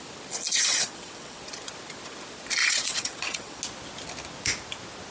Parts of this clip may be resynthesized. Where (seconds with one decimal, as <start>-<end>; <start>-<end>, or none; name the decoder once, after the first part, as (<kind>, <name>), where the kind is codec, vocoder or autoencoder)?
0.5-1.4 (vocoder, WaveNeXt); 2.6-3.6